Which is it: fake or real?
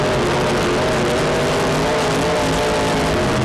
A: real